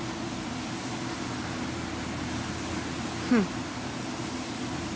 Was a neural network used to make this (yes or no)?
no